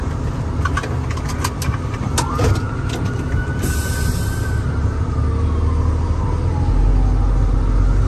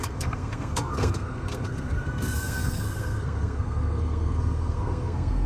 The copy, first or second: second